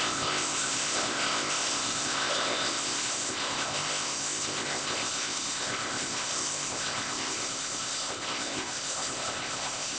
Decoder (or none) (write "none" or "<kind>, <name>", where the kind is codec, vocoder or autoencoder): codec, ZipCodec